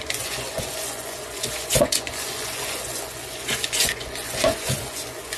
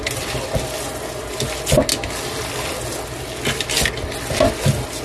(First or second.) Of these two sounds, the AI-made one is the first